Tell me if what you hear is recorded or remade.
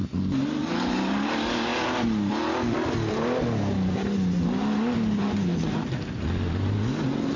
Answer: recorded